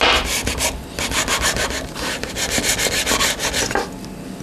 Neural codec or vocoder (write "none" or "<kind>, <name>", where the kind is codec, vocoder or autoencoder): none